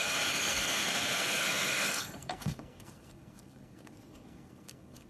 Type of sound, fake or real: fake